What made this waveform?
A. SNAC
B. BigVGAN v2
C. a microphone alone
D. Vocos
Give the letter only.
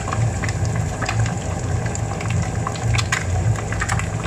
C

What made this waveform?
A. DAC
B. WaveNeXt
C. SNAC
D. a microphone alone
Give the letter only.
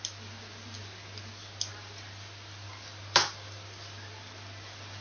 D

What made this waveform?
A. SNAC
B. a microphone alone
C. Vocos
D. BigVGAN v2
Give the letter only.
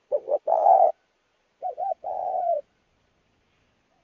C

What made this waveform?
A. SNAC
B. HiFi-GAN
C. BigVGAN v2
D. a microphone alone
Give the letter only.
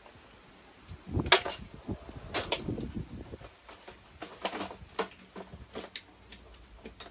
D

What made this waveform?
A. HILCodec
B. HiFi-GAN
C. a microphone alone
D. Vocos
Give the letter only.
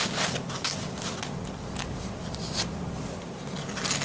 C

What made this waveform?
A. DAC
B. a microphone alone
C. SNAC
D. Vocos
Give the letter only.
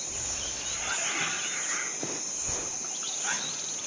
B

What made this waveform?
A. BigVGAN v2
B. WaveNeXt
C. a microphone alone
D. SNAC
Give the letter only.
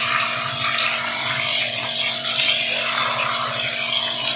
C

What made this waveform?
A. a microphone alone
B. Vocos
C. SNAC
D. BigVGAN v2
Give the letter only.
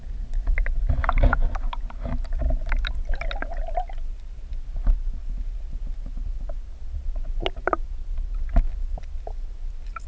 A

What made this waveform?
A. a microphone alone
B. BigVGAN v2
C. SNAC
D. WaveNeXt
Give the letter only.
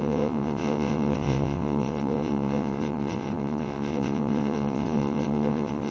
D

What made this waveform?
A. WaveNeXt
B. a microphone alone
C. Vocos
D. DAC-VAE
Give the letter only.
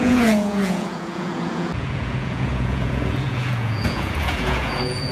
C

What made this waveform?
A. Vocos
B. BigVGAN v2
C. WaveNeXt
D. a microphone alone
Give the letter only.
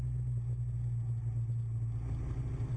D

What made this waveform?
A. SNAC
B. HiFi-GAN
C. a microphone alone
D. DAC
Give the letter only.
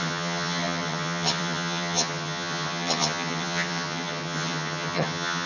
B